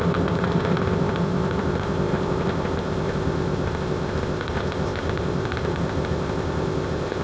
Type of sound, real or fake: fake